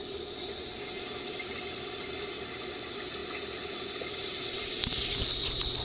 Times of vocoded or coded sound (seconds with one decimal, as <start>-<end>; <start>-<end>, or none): none